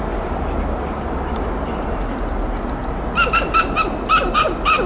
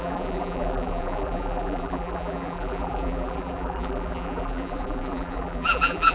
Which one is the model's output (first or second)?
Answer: second